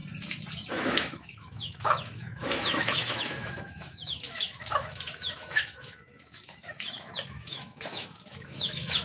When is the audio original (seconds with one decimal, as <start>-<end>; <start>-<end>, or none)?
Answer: 0.0-0.7